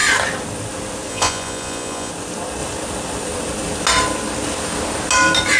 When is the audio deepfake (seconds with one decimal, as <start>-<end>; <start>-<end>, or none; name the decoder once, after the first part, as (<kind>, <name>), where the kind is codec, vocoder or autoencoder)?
1.1-2.1 (vocoder, Vocos)